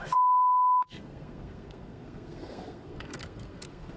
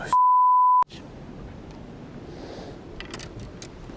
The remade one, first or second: first